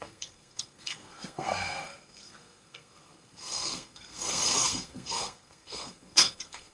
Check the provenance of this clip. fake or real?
fake